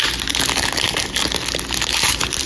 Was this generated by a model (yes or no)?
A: no